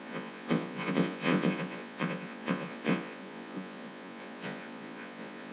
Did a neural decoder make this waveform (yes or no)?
yes